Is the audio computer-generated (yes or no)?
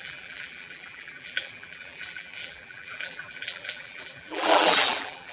yes